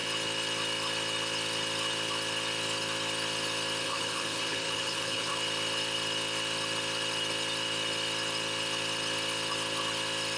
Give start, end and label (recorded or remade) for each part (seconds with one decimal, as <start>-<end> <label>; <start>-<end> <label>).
0.0-3.8 recorded; 3.8-5.3 remade; 5.3-10.4 recorded